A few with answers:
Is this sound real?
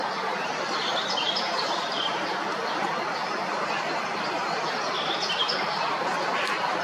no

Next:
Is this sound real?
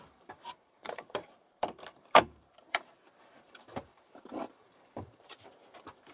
no